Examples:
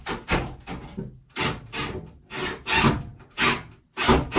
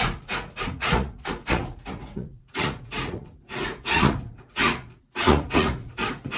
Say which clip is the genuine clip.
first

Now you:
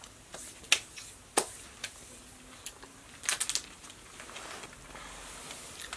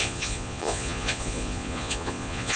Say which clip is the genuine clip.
first